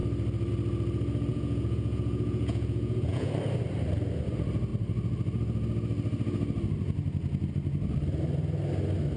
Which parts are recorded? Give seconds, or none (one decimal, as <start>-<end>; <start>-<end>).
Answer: 0.0-1.3; 3.3-9.2